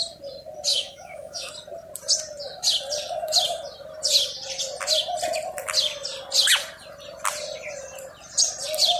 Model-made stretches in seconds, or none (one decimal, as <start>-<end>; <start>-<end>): 0.7-1.5